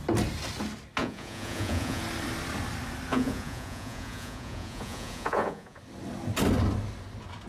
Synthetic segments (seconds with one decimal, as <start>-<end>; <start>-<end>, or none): 1.0-2.0; 3.1-5.8

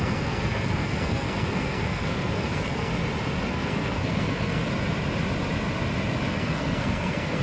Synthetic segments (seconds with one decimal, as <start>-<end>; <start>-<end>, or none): 0.0-2.9; 3.5-4.6; 6.3-7.4

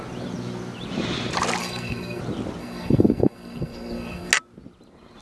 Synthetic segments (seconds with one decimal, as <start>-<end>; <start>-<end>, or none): 1.6-2.2; 2.6-4.3

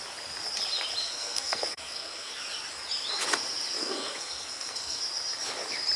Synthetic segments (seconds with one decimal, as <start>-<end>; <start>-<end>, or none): 1.0-2.3; 3.8-5.0